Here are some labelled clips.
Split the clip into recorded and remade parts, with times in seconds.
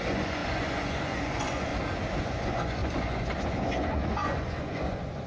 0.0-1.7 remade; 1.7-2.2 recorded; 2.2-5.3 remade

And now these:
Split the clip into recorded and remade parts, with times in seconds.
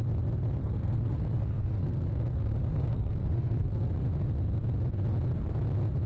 0.0-0.6 recorded; 0.6-3.9 remade; 3.9-6.1 recorded